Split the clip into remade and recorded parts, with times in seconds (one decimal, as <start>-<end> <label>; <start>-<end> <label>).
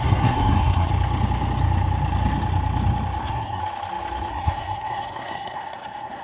0.0-0.9 remade; 0.9-3.2 recorded; 3.2-3.6 remade; 3.6-4.3 recorded; 4.3-6.2 remade